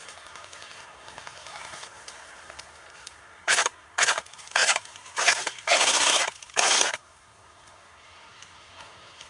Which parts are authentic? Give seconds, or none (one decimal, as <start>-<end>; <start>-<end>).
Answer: none